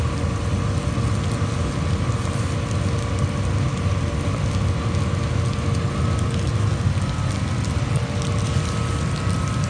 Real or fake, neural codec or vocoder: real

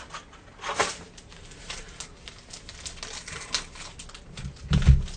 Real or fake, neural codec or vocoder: real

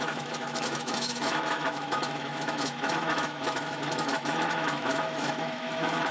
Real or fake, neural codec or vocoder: fake, autoencoder, DAC-VAE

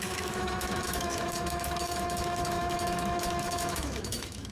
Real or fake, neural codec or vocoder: fake, autoencoder, DAC-VAE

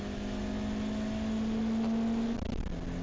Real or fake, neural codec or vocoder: real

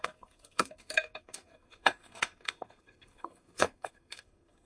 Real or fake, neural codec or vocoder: fake, codec, SNAC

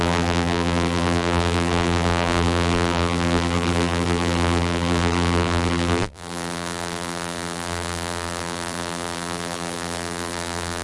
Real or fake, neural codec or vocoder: fake, vocoder, BigVGAN v2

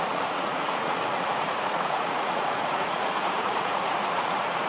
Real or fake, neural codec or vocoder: fake, vocoder, Vocos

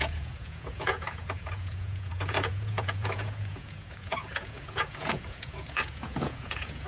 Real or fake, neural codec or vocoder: fake, vocoder, Vocos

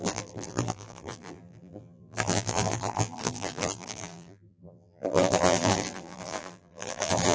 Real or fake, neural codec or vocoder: fake, vocoder, BigVGAN v2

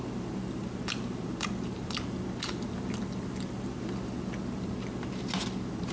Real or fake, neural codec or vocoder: real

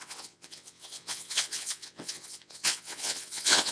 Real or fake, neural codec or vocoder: fake, vocoder, WaveNeXt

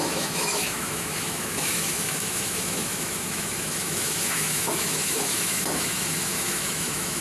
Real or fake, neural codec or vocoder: fake, autoencoder, DAC-VAE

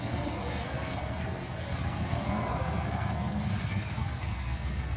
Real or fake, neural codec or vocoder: fake, codec, SNAC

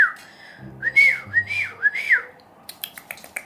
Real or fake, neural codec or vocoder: real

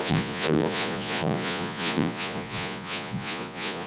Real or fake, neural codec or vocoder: fake, vocoder, Vocos